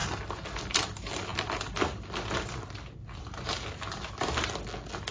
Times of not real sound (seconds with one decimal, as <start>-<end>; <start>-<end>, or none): none